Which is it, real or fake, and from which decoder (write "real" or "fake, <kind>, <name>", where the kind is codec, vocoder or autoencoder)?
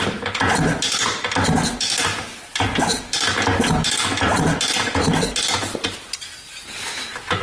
real